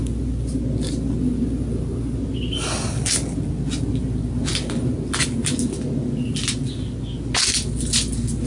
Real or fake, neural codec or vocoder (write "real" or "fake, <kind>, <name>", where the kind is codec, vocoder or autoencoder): real